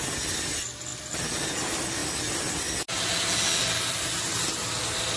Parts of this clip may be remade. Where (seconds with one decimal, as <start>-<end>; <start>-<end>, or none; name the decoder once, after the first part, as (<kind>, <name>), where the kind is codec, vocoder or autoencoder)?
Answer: none

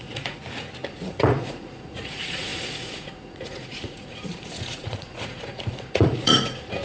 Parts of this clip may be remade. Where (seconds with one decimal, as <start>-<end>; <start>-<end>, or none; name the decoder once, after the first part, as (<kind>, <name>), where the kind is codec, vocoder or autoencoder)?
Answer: 0.0-0.4 (vocoder, Vocos); 0.9-6.8

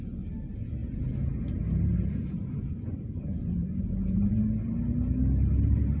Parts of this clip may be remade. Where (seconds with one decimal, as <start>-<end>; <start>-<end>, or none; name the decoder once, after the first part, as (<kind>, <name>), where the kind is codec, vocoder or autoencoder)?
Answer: 0.8-4.4 (vocoder, Vocos)

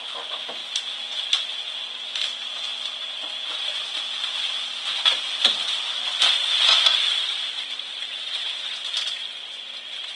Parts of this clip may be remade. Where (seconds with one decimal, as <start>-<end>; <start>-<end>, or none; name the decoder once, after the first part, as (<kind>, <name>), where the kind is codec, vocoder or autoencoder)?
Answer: none